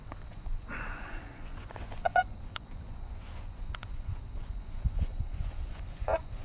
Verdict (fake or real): fake